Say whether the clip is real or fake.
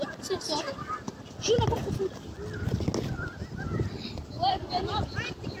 real